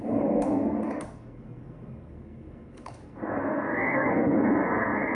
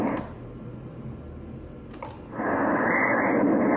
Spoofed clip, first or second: first